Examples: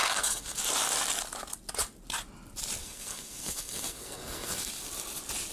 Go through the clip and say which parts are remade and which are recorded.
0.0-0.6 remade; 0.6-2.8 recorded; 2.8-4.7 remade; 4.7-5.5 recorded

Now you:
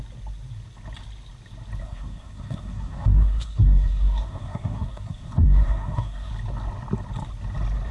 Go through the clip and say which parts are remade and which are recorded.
0.0-1.8 recorded; 1.8-6.3 remade; 6.3-7.9 recorded

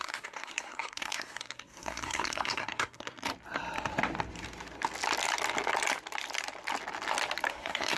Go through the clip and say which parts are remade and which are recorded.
0.0-3.3 remade; 3.3-7.5 recorded; 7.5-8.0 remade

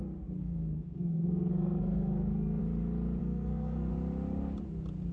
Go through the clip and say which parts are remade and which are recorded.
0.0-0.4 recorded; 0.4-2.6 remade; 2.6-3.2 recorded; 3.2-3.9 remade; 3.9-5.1 recorded

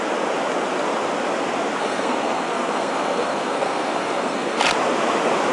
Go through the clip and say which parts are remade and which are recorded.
0.0-1.8 recorded; 1.8-4.6 remade; 4.6-5.5 recorded

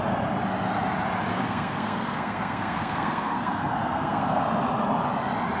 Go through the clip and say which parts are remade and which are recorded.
0.0-1.3 recorded; 1.3-4.4 remade; 4.4-5.6 recorded

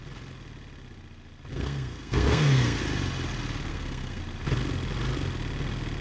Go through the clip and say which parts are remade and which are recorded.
0.0-1.5 recorded; 1.5-2.8 remade; 2.8-3.7 recorded; 3.7-4.2 remade; 4.2-6.0 recorded